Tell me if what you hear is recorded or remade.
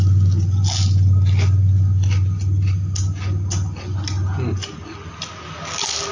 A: recorded